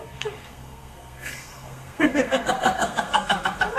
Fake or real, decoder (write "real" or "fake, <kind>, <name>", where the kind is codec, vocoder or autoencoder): fake, codec, SNAC